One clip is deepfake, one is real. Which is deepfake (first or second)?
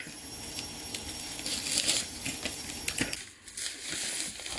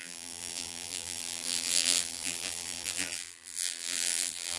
second